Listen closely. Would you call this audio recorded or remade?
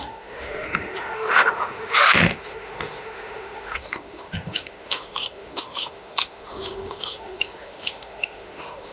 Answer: remade